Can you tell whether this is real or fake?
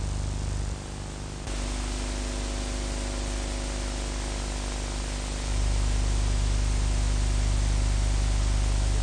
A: real